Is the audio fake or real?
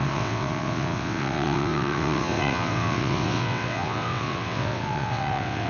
fake